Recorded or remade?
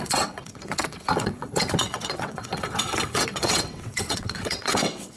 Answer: remade